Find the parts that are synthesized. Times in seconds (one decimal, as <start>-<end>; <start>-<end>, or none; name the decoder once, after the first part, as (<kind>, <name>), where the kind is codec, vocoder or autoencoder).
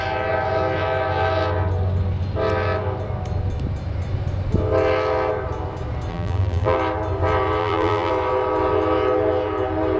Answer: 6.1-6.8 (vocoder, BigVGAN v2); 7.6-8.1